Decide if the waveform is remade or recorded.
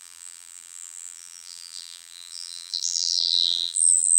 remade